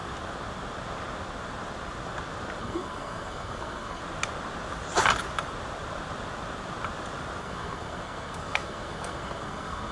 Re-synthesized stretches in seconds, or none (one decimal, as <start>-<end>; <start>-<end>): 2.6-4.0; 7.4-9.9